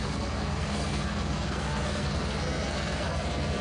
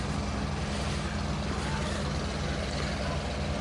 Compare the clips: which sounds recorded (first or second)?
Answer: second